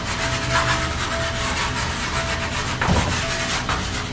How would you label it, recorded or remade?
recorded